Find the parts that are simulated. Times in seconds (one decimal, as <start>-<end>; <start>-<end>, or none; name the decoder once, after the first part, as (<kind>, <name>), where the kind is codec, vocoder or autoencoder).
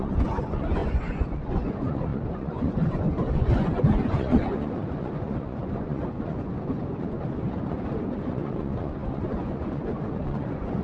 0.0-10.8 (vocoder, Vocos)